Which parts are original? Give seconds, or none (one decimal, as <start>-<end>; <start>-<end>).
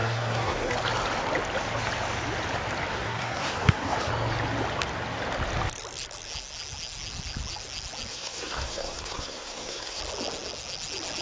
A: 0.7-2.9; 4.1-8.1; 10.0-11.2